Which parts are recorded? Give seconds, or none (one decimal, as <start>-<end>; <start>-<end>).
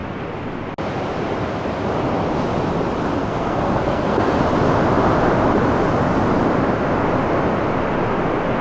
0.0-3.2; 4.4-8.6